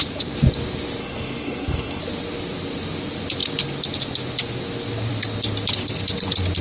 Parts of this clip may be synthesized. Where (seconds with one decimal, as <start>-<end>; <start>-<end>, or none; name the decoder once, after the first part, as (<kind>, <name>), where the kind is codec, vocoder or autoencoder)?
1.0-2.0 (codec, SNAC)